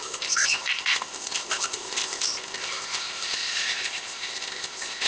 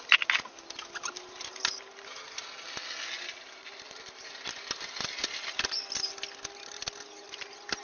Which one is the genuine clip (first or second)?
second